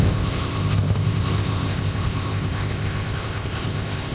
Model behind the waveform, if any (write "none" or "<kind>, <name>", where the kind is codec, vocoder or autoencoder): codec, ZipCodec